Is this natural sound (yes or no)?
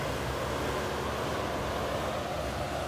yes